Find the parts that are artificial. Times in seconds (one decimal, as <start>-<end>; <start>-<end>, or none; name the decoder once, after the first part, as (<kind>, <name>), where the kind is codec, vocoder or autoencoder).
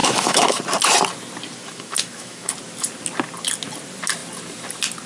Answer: 0.0-0.6 (autoencoder, DAC-VAE); 1.6-2.5